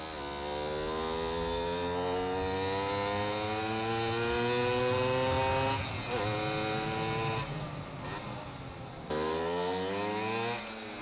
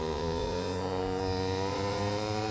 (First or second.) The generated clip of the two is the second